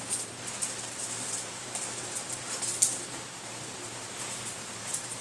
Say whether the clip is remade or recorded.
remade